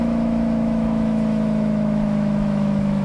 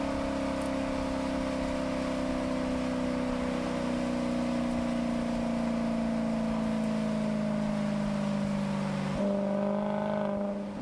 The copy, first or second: first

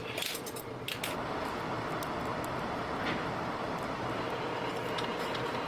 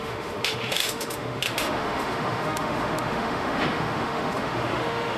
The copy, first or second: second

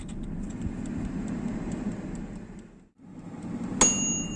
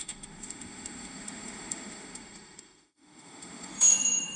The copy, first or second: second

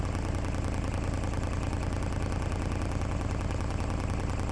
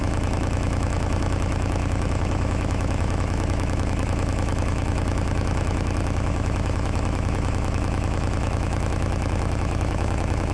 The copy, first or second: second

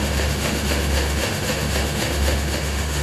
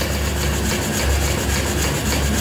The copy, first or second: first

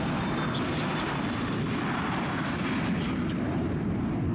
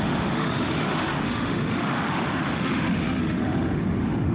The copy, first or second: second